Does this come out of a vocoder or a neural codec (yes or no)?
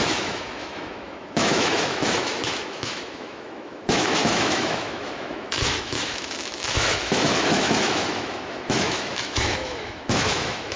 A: yes